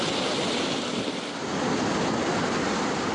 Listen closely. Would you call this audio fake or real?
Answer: real